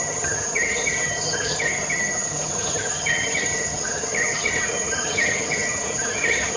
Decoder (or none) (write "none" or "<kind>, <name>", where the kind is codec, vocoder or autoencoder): vocoder, HiFi-GAN